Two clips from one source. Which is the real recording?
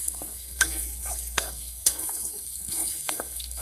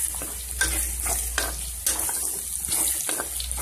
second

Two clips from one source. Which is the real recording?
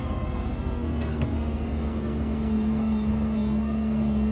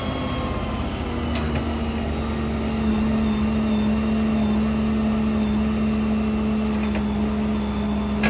second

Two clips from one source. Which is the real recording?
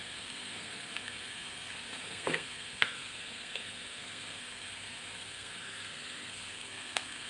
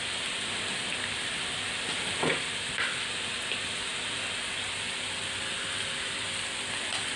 second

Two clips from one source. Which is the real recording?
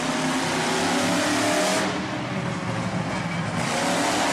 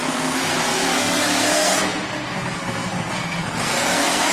first